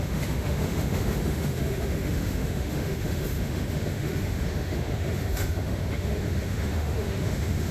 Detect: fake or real fake